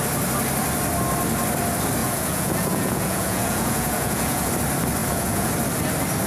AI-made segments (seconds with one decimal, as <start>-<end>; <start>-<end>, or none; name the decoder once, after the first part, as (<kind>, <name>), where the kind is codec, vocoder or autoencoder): 2.0-4.5 (vocoder, Vocos); 5.0-5.5